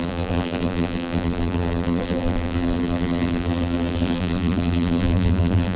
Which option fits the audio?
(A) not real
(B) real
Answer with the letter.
A